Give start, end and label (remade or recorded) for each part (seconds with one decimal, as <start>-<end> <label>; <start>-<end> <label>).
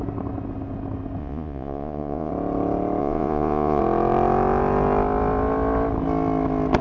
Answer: 0.0-1.2 recorded; 1.2-2.3 remade; 2.3-3.0 recorded; 3.0-3.8 remade; 3.8-6.8 recorded